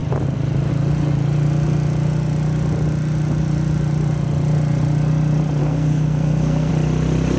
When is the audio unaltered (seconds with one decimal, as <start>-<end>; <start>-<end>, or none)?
0.0-5.6; 6.7-7.4